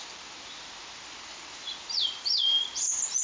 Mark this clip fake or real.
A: real